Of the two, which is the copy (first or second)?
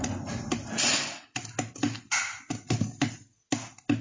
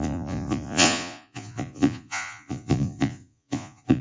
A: second